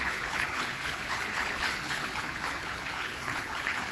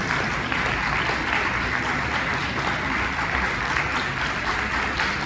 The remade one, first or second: first